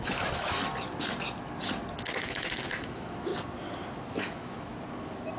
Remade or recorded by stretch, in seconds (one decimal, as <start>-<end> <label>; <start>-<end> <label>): 0.0-0.6 remade; 0.6-2.0 recorded; 2.0-3.3 remade; 3.3-4.1 recorded; 4.1-4.7 remade; 4.7-5.4 recorded